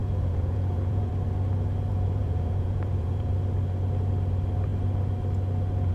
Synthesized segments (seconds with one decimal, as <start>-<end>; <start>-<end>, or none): 0.0-1.1; 1.9-3.3